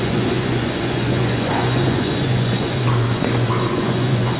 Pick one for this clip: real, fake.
fake